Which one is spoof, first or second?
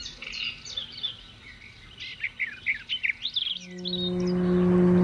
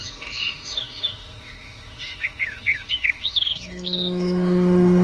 second